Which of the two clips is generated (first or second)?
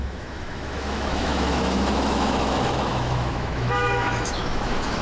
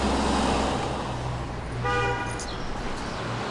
first